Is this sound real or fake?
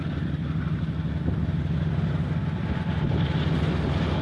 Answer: real